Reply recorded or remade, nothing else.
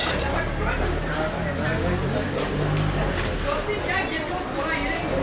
recorded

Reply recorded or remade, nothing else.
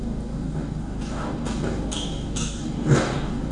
remade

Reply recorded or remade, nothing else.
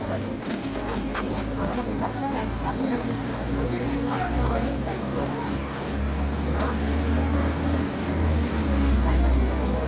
remade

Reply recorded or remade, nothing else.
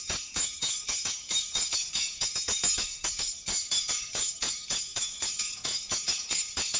remade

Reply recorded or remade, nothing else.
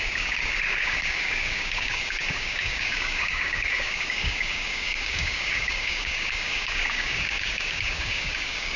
remade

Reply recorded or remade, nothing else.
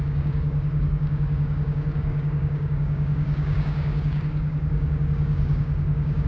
remade